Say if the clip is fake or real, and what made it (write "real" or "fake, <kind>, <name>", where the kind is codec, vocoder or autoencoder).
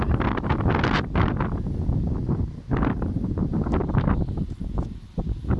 real